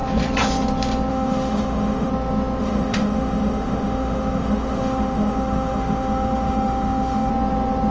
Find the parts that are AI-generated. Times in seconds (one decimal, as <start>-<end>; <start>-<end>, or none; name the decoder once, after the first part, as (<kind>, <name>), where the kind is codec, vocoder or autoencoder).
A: 1.1-2.1 (autoencoder, DAC-VAE); 2.6-7.3